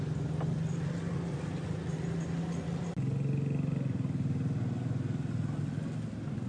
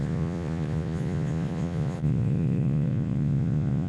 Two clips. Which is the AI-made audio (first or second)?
second